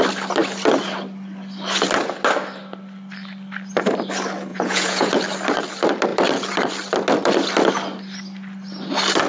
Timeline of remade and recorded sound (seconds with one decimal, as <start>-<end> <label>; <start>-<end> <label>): 0.0-4.5 recorded; 4.5-5.1 remade; 5.1-9.3 recorded